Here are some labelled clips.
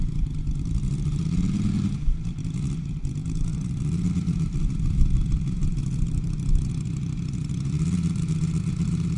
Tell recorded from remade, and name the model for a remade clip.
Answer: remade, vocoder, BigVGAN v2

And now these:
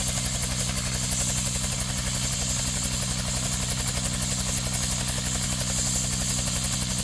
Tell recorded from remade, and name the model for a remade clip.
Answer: recorded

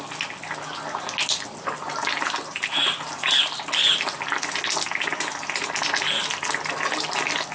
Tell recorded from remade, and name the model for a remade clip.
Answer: recorded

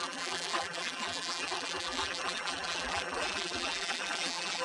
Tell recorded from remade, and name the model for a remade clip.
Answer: remade, vocoder, BigVGAN v2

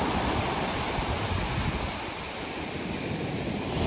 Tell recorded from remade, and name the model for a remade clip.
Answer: remade, vocoder, BigVGAN v2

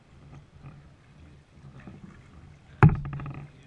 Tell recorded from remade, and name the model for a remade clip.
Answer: recorded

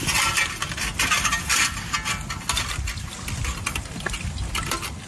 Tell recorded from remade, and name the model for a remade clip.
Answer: recorded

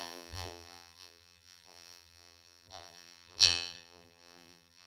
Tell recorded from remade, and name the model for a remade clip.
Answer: remade, vocoder, BigVGAN v2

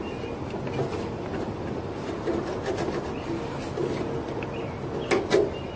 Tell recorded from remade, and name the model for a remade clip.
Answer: recorded